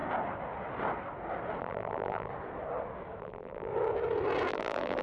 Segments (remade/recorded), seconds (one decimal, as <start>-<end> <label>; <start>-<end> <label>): 0.0-1.6 recorded; 1.6-2.3 remade; 2.3-3.2 recorded; 3.2-3.7 remade; 3.7-4.5 recorded; 4.5-5.0 remade